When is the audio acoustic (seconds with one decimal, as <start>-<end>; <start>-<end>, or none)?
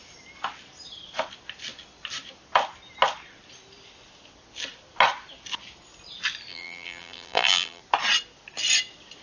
0.0-6.5; 7.8-9.2